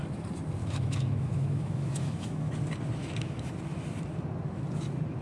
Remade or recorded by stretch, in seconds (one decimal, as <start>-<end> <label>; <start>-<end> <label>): 0.0-0.6 recorded; 0.6-2.5 remade; 2.5-3.0 recorded; 3.0-3.5 remade; 3.5-5.2 recorded